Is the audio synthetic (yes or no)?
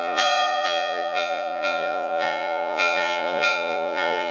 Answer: yes